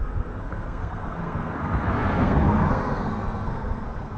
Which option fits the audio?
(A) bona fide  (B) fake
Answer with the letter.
B